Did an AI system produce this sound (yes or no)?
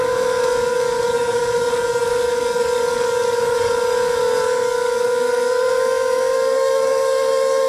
yes